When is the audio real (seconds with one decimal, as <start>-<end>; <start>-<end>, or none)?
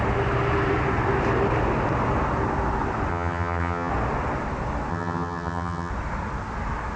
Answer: 0.0-3.1; 3.9-4.9; 5.9-7.0